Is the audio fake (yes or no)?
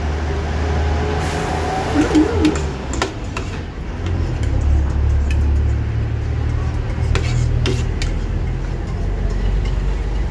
no